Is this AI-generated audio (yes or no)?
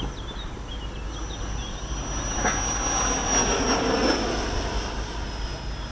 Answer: no